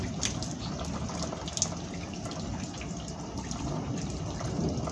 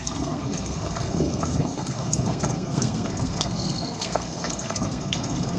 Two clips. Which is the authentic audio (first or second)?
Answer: first